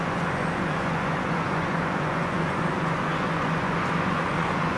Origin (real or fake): fake